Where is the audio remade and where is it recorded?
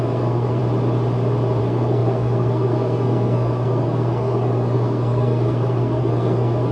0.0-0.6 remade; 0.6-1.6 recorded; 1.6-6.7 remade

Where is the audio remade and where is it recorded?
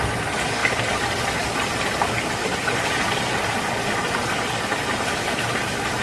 0.0-6.0 recorded